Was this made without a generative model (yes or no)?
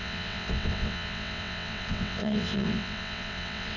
no